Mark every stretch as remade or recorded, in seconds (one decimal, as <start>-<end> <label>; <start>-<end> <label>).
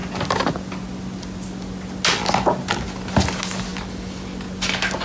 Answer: 0.0-5.0 recorded